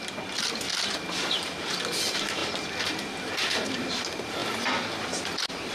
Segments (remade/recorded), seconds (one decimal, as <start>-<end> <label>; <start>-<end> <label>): 0.0-5.7 recorded